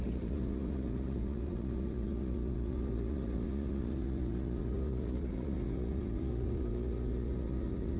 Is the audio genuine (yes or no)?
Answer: no